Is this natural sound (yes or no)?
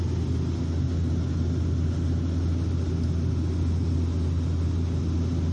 yes